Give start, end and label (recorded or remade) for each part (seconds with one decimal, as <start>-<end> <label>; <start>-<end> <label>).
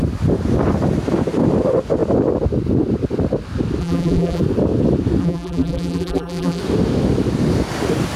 0.0-3.8 recorded; 3.8-4.4 remade; 4.4-5.2 recorded; 5.2-6.6 remade; 6.6-8.2 recorded